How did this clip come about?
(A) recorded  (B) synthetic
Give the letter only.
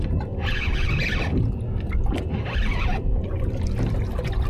A